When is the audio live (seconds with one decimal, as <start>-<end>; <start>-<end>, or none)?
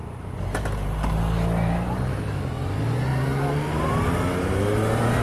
1.2-5.2